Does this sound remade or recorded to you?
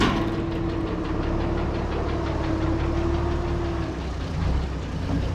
recorded